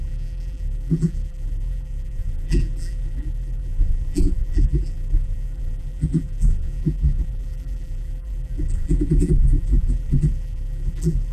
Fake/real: fake